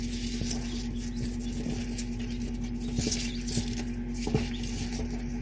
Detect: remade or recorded recorded